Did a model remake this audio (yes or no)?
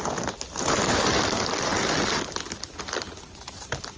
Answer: no